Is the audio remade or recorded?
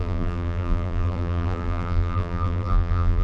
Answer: remade